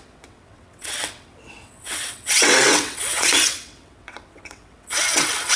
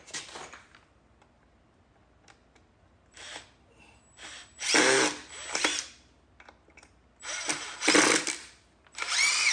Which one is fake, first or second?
first